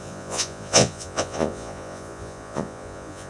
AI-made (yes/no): yes